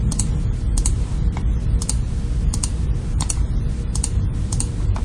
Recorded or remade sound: recorded